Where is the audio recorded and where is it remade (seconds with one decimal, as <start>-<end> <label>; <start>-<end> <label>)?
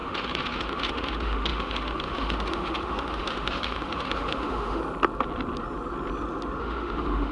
0.0-4.8 remade; 4.8-6.6 recorded; 6.6-7.3 remade